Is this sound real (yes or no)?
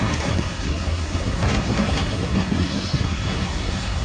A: no